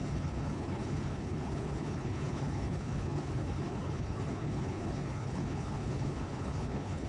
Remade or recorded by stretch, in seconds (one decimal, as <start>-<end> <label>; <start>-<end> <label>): 0.0-7.1 remade